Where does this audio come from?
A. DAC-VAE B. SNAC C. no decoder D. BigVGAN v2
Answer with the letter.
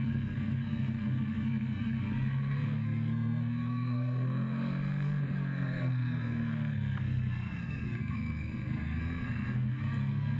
B